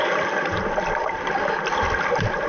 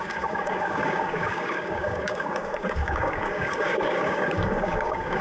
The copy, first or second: second